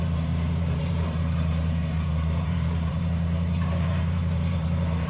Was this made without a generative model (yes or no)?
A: no